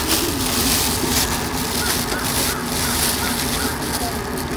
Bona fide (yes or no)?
yes